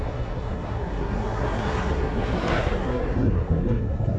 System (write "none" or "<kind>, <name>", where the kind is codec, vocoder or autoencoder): codec, SNAC